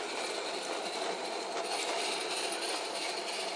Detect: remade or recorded remade